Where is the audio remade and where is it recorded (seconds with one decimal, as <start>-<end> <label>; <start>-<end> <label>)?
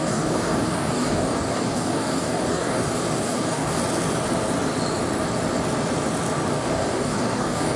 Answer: 0.0-3.8 remade; 3.8-6.5 recorded; 6.5-7.8 remade